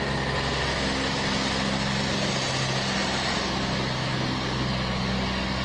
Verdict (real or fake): real